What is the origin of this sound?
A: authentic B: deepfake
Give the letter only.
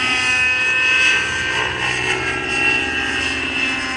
A